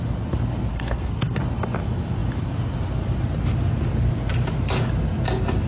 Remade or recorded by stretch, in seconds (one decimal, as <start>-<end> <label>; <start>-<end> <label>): 0.0-0.7 recorded; 0.7-1.4 remade; 1.4-5.7 recorded